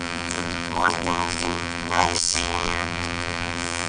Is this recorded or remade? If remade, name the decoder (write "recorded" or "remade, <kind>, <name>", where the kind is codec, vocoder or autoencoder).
remade, vocoder, BigVGAN v2